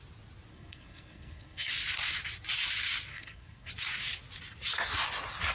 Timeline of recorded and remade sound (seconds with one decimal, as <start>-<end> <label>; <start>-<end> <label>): 0.0-0.5 recorded; 0.5-1.7 remade; 1.7-3.1 recorded; 3.1-3.7 remade; 3.7-5.5 recorded